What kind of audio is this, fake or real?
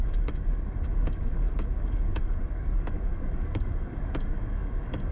fake